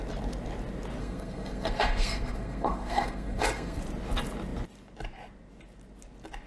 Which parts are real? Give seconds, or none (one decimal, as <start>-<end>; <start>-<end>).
0.0-1.0; 3.8-6.5

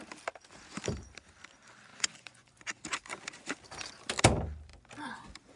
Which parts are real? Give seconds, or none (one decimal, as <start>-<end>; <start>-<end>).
0.0-1.9; 2.6-5.6

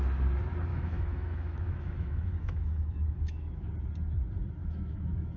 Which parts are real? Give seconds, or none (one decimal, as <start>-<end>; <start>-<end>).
0.0-0.7; 3.7-4.6